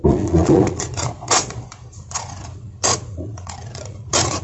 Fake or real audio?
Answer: fake